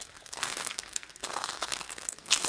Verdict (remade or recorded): remade